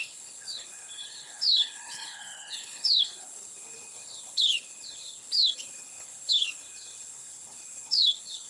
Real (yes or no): no